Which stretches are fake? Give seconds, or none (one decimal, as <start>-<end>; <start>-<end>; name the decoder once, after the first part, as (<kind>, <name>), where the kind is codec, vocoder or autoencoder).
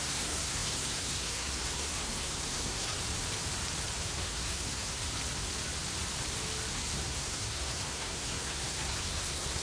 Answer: 0.0-3.0 (codec, SNAC); 4.0-5.0; 6.7-9.6